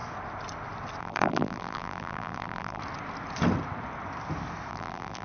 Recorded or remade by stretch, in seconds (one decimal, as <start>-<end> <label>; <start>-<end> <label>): 0.0-1.0 recorded; 1.0-2.8 remade; 2.8-4.7 recorded; 4.7-5.2 remade